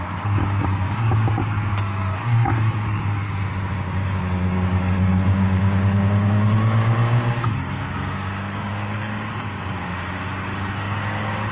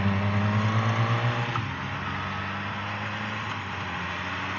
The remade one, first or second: first